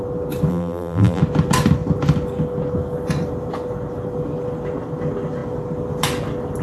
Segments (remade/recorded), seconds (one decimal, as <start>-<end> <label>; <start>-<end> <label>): 0.0-0.5 recorded; 0.5-1.2 remade; 1.2-6.6 recorded

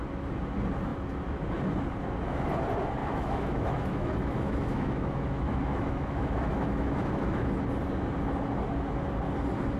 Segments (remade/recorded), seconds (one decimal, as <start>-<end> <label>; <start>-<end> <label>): 0.0-3.0 recorded; 3.0-7.6 remade; 7.6-9.8 recorded

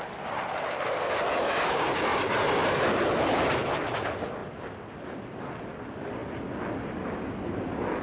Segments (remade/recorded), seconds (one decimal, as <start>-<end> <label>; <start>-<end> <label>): 0.0-2.1 recorded; 2.1-3.6 remade; 3.6-8.0 recorded

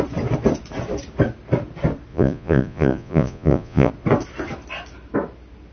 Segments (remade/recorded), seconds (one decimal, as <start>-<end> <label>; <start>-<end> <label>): 0.0-2.1 recorded; 2.1-3.9 remade; 3.9-5.7 recorded